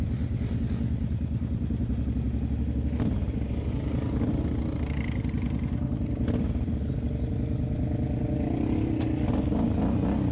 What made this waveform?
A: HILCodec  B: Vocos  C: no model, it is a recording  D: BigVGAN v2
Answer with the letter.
C